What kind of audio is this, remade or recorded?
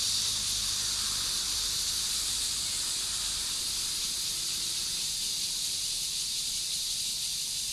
remade